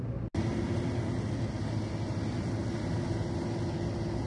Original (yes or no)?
yes